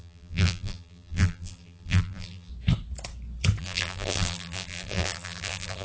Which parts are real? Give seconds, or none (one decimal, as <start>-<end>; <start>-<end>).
2.5-3.6